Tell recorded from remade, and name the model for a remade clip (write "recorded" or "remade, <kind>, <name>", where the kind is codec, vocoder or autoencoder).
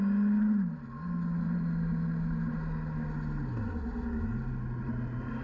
recorded